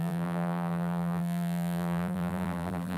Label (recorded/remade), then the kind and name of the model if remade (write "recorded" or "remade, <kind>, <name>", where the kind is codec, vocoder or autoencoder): remade, vocoder, BigVGAN v2